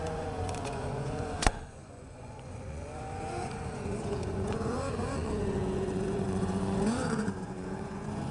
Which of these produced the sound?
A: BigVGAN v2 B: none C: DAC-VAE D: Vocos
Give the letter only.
D